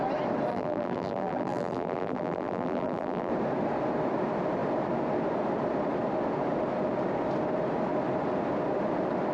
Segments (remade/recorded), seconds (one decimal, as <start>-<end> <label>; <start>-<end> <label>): 0.0-0.5 recorded; 0.5-3.3 remade; 3.3-9.3 recorded